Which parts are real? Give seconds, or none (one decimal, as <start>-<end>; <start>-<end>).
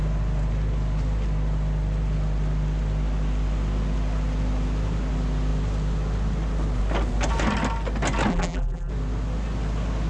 0.0-8.3; 8.9-10.1